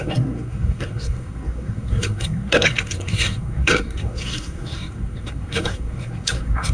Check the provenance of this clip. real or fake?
fake